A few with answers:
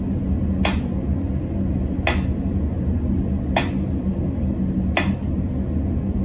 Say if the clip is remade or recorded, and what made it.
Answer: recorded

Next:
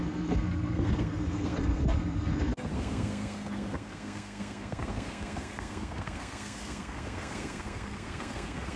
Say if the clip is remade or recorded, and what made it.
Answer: remade, codec, SNAC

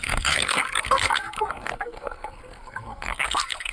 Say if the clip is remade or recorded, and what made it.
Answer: remade, codec, SNAC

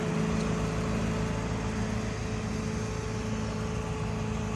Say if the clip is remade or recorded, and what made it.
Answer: recorded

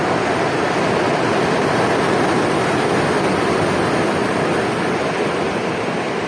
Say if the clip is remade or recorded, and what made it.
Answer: recorded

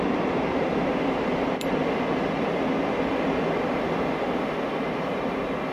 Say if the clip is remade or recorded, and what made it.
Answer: recorded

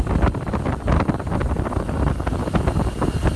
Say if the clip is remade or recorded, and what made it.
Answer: recorded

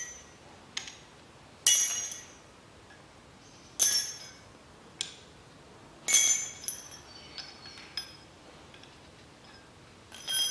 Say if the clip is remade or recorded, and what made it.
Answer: recorded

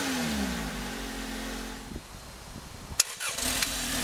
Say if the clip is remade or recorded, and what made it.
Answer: recorded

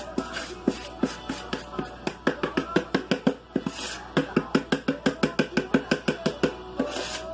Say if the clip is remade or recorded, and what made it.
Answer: recorded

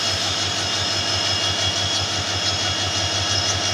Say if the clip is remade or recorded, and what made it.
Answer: recorded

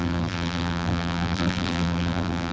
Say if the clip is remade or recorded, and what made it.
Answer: remade, vocoder, BigVGAN v2